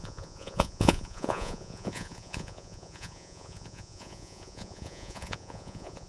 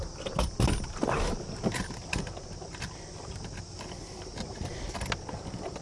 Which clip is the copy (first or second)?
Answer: first